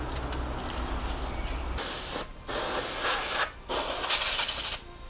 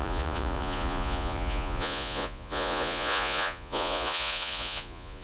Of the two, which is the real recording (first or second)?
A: first